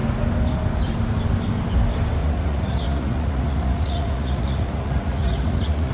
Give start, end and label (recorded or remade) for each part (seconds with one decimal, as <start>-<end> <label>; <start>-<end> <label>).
0.0-2.2 recorded; 2.2-5.9 remade